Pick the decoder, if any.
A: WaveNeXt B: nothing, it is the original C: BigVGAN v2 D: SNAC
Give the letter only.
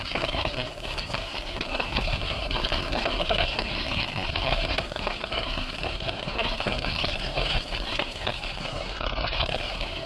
D